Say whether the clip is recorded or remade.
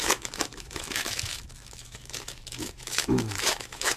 remade